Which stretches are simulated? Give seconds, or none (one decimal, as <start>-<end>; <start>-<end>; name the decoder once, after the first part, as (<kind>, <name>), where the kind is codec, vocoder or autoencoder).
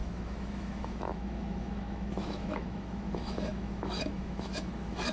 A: 0.0-5.1 (autoencoder, DAC-VAE)